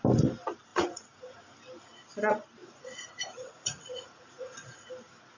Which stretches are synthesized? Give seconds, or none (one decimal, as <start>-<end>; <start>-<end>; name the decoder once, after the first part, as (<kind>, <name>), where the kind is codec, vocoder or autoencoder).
0.7-1.4 (vocoder, Vocos); 2.6-4.9